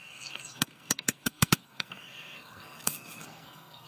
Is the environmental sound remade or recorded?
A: remade